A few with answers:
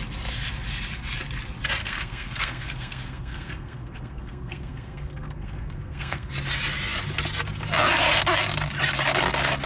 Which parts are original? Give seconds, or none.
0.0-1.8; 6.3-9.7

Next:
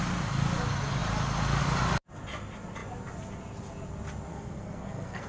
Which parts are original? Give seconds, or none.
0.0-4.3

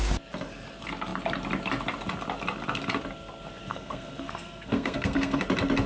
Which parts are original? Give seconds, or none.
0.0-3.7; 5.4-5.9

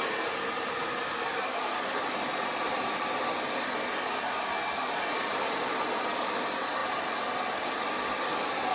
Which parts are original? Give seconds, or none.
0.0-8.7

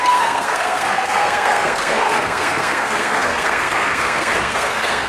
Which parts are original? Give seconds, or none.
none